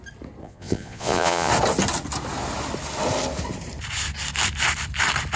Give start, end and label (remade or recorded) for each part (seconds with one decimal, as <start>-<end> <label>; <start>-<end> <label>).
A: 0.0-0.4 recorded; 0.4-1.5 remade; 1.5-5.4 recorded